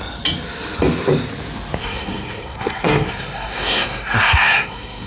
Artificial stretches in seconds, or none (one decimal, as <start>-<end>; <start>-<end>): 1.8-5.1